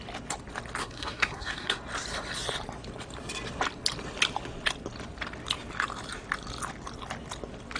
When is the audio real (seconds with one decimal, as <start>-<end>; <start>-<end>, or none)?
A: 0.0-0.8; 1.8-7.8